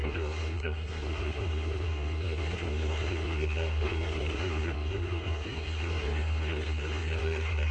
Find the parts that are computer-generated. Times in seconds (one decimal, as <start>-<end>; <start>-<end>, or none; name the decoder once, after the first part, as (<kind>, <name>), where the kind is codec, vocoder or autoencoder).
0.0-7.7 (codec, SNAC)